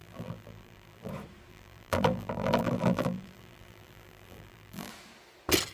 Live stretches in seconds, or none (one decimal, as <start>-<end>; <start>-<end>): 1.1-1.5; 4.9-5.7